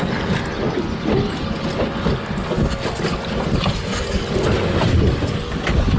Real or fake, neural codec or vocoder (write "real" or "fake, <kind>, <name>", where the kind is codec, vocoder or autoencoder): real